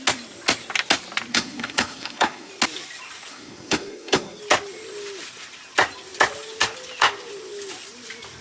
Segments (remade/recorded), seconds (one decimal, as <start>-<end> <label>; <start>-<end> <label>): 0.0-1.3 recorded; 1.3-2.5 remade; 2.5-3.3 recorded; 3.3-4.4 remade; 4.4-8.4 recorded